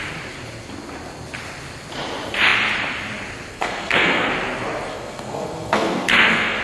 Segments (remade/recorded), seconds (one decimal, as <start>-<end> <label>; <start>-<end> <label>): 0.0-3.5 recorded; 3.5-4.3 remade; 4.3-4.9 recorded; 4.9-6.6 remade